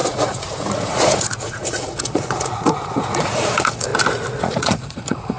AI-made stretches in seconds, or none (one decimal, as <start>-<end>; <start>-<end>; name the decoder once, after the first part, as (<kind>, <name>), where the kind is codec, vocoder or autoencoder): 0.0-3.9 (vocoder, Vocos); 4.4-5.4